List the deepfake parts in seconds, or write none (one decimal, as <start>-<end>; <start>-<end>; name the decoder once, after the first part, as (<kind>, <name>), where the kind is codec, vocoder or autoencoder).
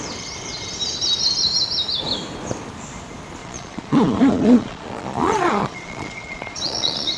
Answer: 3.4-7.2 (vocoder, Vocos)